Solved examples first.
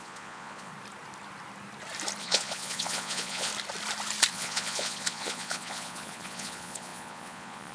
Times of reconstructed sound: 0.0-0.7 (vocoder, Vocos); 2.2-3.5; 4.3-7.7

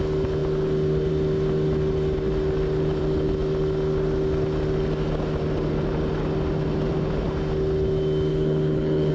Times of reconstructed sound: 8.3-9.1 (codec, HILCodec)